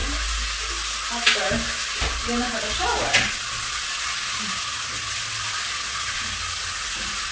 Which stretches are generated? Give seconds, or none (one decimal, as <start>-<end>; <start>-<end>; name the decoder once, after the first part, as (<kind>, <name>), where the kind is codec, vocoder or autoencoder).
none

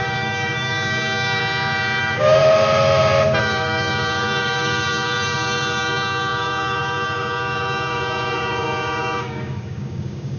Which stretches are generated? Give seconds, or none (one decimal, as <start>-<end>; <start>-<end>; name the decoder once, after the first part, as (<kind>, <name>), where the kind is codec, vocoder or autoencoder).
0.0-1.4 (codec, DAC); 2.0-2.4; 3.4-10.4

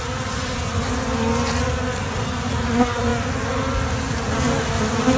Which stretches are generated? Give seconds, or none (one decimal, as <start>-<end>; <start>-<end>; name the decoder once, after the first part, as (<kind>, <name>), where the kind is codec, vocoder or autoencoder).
none

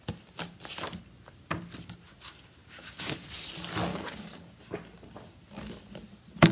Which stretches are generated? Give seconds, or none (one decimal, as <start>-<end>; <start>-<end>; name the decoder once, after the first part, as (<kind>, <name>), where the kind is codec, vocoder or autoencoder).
2.6-3.1 (codec, DAC); 3.9-4.6